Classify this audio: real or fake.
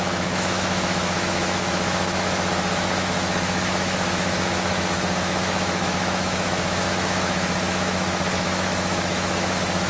fake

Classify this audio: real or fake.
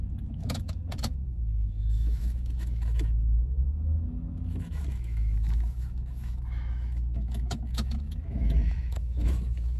fake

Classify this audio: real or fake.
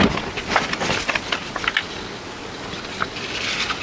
real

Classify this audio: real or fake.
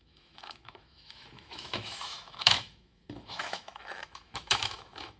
fake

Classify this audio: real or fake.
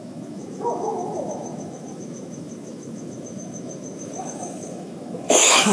fake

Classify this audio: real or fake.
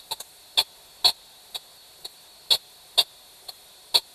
real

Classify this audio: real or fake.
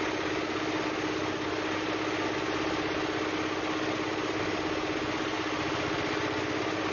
real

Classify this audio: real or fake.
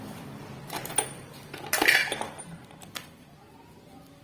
real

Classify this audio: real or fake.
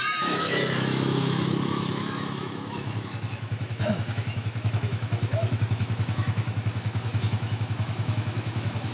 fake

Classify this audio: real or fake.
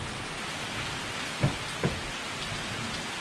real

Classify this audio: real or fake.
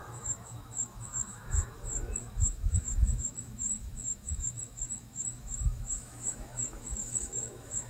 fake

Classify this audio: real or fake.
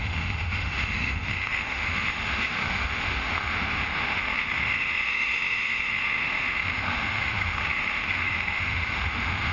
fake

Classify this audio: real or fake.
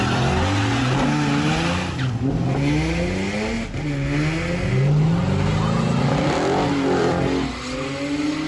real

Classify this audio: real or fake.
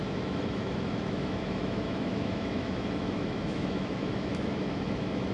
fake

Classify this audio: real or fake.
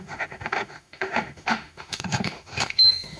fake